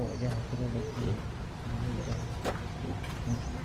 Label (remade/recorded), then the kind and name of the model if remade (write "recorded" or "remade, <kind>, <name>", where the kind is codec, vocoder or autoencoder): recorded